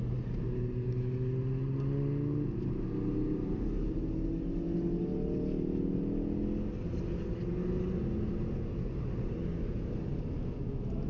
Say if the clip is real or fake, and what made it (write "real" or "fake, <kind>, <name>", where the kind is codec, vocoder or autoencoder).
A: real